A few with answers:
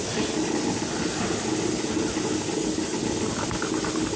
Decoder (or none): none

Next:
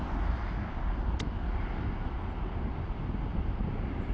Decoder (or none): none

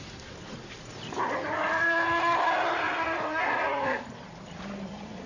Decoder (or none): none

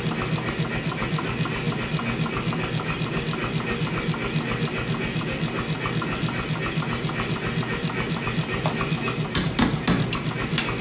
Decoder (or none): none